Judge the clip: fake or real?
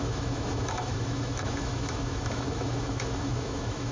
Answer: fake